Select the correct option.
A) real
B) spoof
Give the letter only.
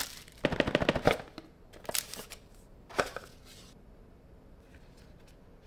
A